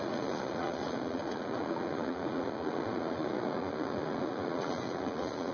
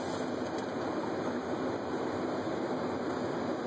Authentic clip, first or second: second